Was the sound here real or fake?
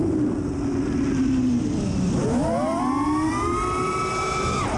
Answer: real